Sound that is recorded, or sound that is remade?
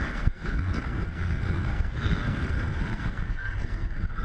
remade